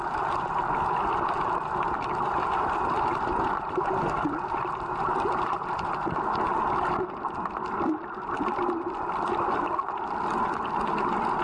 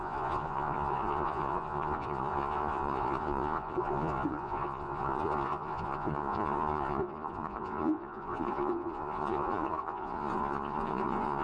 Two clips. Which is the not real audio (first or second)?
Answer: second